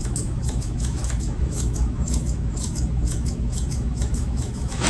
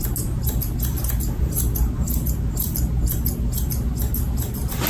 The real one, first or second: second